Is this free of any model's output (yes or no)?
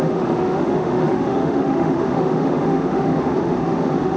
no